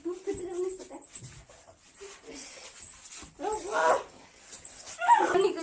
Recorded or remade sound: recorded